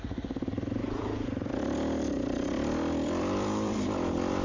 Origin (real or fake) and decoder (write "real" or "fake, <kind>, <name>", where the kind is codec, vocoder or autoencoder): fake, vocoder, BigVGAN v2